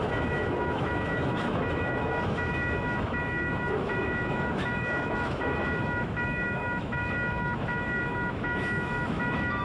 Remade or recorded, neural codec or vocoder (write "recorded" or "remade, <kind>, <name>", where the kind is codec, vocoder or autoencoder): remade, autoencoder, DAC-VAE